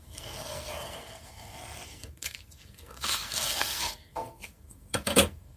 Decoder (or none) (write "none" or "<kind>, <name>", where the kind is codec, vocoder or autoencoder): codec, SNAC